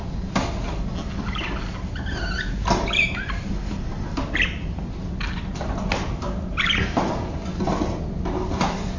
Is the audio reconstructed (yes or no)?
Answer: no